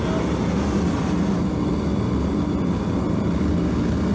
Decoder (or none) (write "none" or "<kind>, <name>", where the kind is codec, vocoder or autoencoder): none